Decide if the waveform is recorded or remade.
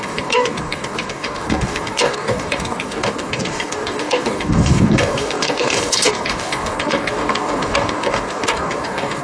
remade